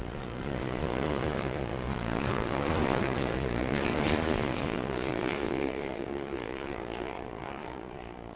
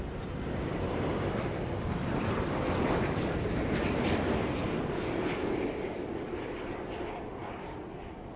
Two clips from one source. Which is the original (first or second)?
second